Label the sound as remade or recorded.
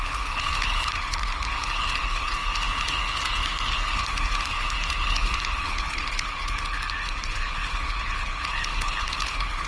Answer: remade